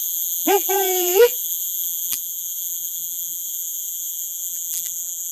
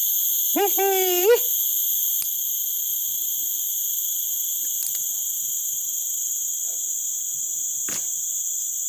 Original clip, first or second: second